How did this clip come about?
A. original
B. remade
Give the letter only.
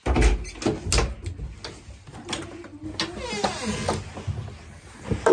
A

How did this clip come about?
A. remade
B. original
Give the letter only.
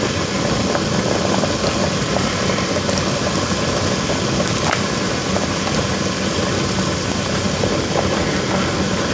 B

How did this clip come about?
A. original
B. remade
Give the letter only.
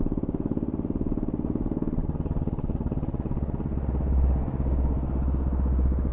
A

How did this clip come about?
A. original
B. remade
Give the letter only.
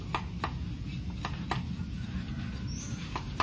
A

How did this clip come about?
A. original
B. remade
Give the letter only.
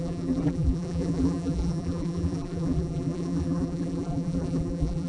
B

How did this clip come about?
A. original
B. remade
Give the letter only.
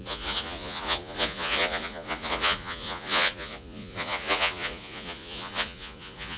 B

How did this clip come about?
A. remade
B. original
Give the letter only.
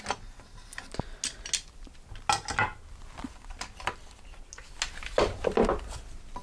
B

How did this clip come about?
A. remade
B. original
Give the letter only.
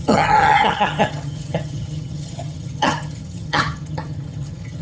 A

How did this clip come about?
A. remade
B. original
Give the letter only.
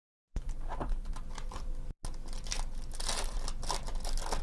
B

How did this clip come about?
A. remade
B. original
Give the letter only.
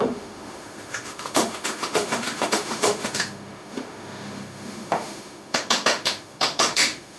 A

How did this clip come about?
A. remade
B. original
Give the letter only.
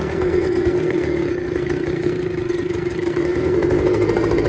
A